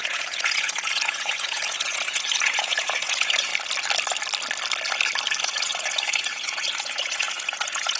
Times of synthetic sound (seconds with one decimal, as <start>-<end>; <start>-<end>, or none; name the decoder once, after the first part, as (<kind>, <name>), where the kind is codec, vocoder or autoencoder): 0.0-3.5 (vocoder, Vocos); 5.4-8.0